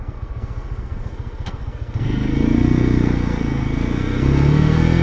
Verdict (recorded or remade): remade